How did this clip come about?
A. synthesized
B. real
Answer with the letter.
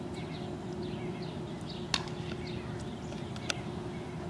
B